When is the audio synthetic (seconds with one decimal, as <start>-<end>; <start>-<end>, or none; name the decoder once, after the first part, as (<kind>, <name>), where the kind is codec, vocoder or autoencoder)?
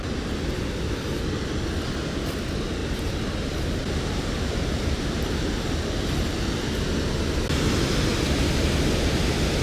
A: 2.8-5.3 (vocoder, BigVGAN v2)